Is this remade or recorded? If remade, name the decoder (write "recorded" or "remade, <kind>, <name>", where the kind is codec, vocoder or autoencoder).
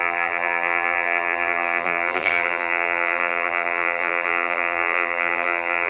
remade, vocoder, BigVGAN v2